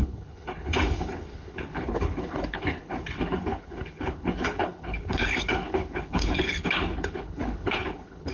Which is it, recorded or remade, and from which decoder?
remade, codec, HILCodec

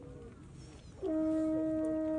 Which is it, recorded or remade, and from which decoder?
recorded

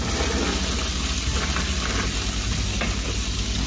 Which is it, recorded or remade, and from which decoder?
recorded